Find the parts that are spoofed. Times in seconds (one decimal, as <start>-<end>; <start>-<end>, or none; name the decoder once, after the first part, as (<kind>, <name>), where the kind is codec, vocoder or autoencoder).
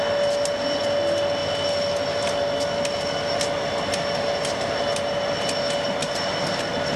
6.0-6.6 (vocoder, BigVGAN v2)